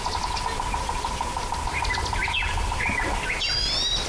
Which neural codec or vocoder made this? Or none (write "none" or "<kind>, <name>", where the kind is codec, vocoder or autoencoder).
none